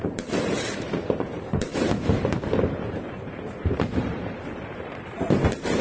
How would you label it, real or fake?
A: fake